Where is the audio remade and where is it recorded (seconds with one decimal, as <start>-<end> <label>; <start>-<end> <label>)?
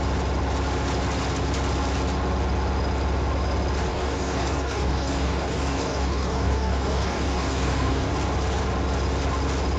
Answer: 0.0-3.9 recorded; 3.9-8.1 remade; 8.1-9.8 recorded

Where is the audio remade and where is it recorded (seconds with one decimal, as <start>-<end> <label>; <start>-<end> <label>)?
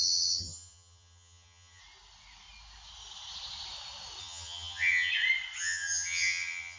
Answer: 0.0-1.8 remade; 1.8-4.2 recorded; 4.2-5.1 remade; 5.1-5.6 recorded; 5.6-6.8 remade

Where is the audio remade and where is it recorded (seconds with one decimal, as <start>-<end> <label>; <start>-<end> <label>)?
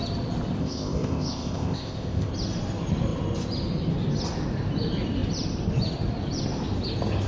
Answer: 0.0-0.6 recorded; 0.6-2.3 remade; 2.3-7.3 recorded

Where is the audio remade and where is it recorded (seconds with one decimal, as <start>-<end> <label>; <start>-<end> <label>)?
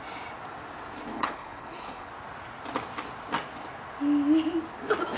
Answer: 0.0-1.1 recorded; 1.1-2.1 remade; 2.1-5.2 recorded